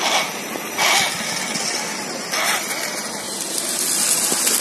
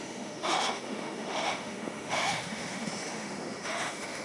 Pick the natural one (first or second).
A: first